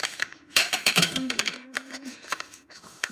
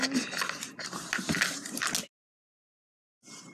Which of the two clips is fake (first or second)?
first